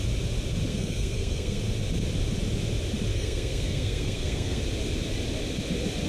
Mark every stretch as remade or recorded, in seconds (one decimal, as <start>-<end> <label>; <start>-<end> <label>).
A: 0.0-0.7 recorded; 0.7-1.6 remade; 1.6-3.1 recorded; 3.1-4.6 remade; 4.6-6.1 recorded